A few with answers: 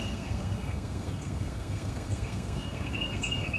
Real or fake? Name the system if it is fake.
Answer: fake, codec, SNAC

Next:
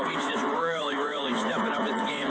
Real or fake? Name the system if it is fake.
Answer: fake, vocoder, WaveNeXt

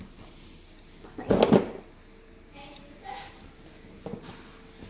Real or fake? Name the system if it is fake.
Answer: real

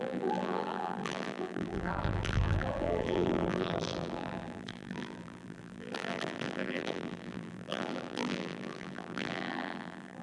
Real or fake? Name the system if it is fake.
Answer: fake, vocoder, BigVGAN v2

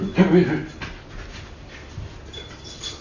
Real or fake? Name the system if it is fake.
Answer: real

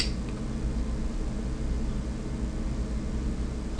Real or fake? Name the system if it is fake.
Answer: real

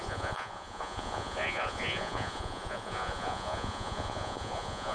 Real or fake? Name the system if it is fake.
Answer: fake, vocoder, Vocos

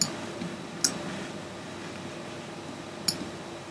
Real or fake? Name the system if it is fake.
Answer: real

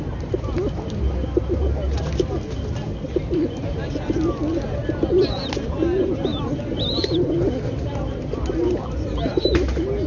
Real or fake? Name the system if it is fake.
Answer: real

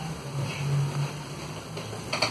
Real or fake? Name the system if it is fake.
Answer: real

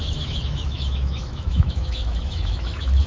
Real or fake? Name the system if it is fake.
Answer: fake, autoencoder, DAC-VAE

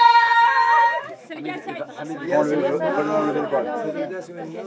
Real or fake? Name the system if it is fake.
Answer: fake, autoencoder, DAC-VAE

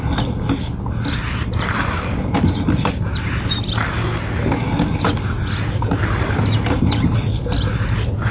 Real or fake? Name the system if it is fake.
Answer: real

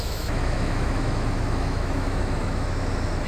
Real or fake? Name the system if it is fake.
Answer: fake, autoencoder, DAC-VAE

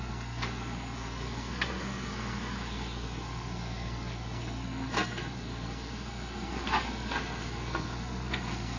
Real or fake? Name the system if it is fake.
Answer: fake, codec, SNAC